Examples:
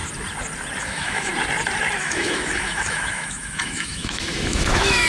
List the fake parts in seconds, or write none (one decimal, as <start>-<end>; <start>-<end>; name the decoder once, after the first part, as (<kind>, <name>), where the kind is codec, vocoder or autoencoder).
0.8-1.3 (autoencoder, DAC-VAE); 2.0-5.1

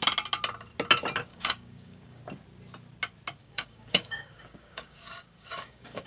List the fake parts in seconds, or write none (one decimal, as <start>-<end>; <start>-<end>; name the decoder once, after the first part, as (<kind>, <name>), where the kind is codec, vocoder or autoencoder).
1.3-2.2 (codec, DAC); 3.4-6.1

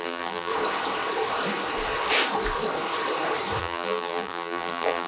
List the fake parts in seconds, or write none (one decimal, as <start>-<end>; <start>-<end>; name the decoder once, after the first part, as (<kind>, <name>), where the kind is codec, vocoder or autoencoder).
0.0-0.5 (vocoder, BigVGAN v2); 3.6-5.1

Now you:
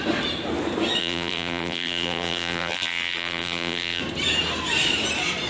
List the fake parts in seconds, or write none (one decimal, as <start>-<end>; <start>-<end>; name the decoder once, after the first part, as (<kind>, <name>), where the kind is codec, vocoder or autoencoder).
1.0-4.0 (vocoder, BigVGAN v2)

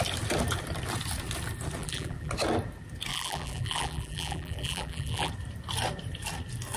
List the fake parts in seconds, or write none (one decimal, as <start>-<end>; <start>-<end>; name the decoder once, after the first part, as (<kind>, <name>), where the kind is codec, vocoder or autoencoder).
1.8-2.3 (vocoder, BigVGAN v2); 3.1-5.3

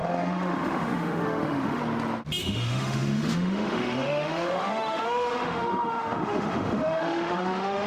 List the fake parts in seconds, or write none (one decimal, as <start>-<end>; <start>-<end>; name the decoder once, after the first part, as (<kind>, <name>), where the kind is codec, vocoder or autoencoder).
0.0-1.8 (autoencoder, DAC-VAE); 2.4-7.9

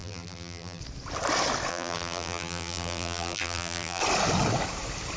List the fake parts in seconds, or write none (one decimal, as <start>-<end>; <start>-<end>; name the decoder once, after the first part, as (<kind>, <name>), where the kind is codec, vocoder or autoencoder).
0.0-0.8 (vocoder, BigVGAN v2); 1.7-4.0